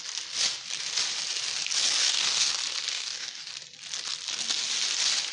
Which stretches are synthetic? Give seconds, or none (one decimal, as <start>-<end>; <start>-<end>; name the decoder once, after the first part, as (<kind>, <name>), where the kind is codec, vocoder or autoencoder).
2.0-2.5 (codec, DAC); 2.9-3.5